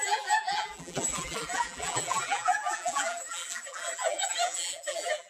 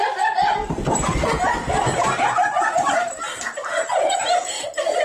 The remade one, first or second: first